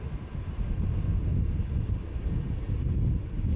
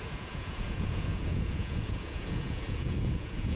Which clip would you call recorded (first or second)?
first